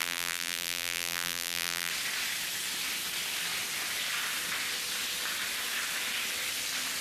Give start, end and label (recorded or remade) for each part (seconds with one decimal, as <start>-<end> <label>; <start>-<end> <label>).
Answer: 0.0-1.9 remade; 1.9-7.0 recorded